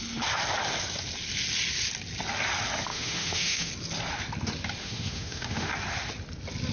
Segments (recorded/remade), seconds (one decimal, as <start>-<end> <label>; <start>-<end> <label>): 0.0-2.9 recorded; 2.9-3.7 remade; 3.7-4.8 recorded; 4.8-5.7 remade; 5.7-6.7 recorded